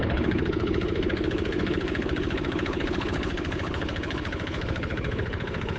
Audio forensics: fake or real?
fake